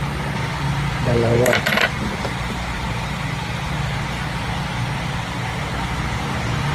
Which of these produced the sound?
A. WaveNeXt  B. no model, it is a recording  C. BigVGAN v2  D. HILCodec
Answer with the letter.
C